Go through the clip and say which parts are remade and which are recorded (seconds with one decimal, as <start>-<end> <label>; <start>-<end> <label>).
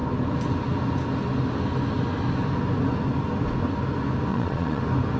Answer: 0.0-4.3 recorded; 4.3-4.8 remade; 4.8-5.2 recorded